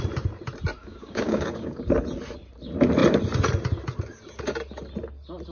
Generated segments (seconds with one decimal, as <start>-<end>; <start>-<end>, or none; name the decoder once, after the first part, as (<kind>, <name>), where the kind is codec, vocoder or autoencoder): 0.8-1.8 (codec, DAC)